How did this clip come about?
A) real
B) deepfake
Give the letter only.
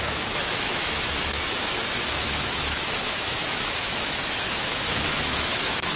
B